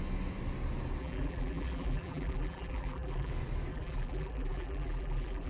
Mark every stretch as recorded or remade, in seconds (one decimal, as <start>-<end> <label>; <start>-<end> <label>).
0.0-1.0 recorded; 1.0-3.3 remade; 3.3-3.7 recorded; 3.7-5.5 remade